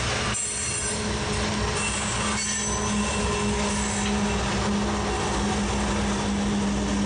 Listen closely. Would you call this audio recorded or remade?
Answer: recorded